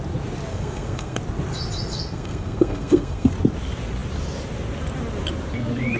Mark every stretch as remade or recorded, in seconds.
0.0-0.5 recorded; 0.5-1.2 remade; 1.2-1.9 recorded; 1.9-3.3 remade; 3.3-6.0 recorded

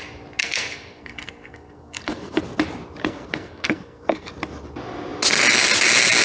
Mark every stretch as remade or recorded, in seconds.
0.0-0.4 recorded; 0.4-2.4 remade; 2.4-3.0 recorded; 3.0-4.3 remade; 4.3-6.2 recorded

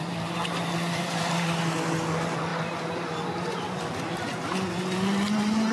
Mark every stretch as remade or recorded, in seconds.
0.0-5.7 recorded

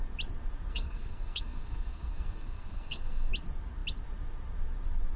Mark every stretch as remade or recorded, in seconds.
0.0-0.7 recorded; 0.7-3.3 remade; 3.3-5.2 recorded

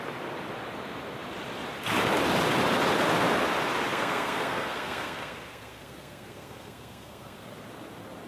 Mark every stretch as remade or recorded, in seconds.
0.0-3.9 recorded; 3.9-7.5 remade; 7.5-8.3 recorded

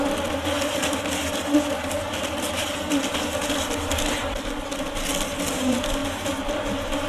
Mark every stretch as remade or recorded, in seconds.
0.0-7.1 recorded